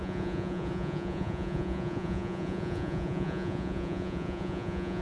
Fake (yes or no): yes